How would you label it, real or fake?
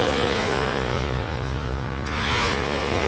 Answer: fake